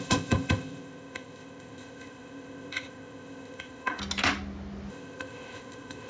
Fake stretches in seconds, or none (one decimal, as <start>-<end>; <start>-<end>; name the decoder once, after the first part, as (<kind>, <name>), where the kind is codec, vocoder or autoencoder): 0.0-4.0 (codec, ZipCodec); 4.9-6.1